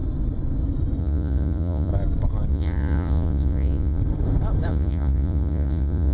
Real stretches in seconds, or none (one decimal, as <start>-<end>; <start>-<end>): 0.0-1.0; 1.9-2.5; 4.0-4.7